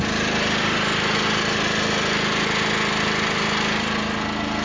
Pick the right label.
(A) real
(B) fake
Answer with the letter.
A